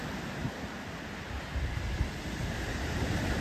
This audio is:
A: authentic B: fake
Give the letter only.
A